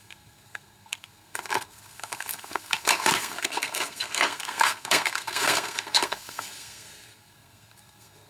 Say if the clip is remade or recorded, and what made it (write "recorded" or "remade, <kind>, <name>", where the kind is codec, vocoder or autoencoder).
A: remade, codec, SNAC